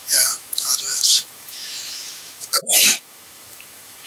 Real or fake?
fake